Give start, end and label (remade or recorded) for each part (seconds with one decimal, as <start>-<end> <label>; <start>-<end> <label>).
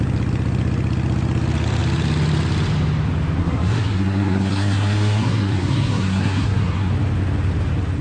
0.0-3.4 recorded; 3.4-6.9 remade; 6.9-8.0 recorded